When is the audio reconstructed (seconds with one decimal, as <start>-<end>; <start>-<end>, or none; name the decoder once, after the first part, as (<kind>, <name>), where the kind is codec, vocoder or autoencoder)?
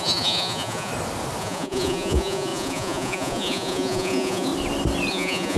0.0-0.9 (vocoder, Vocos); 1.4-4.5; 5.1-5.6